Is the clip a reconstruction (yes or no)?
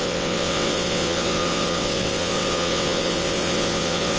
yes